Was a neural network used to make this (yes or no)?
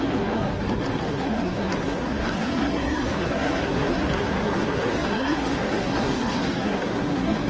yes